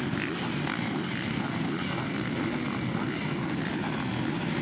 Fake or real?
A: real